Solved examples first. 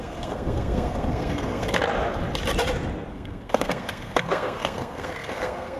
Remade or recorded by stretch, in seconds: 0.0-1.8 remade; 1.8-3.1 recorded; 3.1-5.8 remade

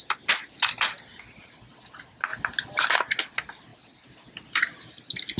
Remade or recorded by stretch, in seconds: 0.0-5.4 recorded

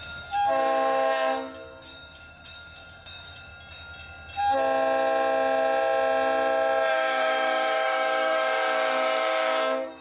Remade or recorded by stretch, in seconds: 0.0-3.5 remade; 3.5-6.9 recorded; 6.9-10.0 remade

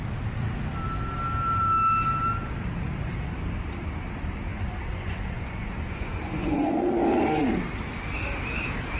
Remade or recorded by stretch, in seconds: 0.0-4.5 recorded; 4.5-7.0 remade; 7.0-9.0 recorded

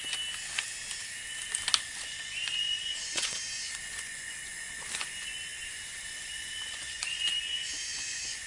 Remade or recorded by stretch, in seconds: 0.0-2.0 recorded; 2.0-8.5 remade

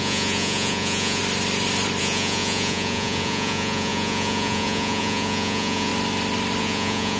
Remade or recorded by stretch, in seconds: 0.0-1.2 remade; 1.2-2.0 recorded; 2.0-5.9 remade; 5.9-6.6 recorded; 6.6-7.2 remade

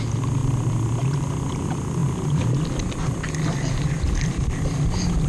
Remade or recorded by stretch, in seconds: 0.0-5.3 recorded